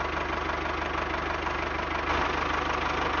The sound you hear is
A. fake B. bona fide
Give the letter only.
B